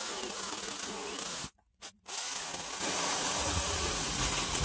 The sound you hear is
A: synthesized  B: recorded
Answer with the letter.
A